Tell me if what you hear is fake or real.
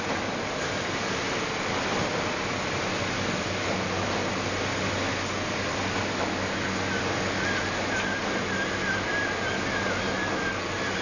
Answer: real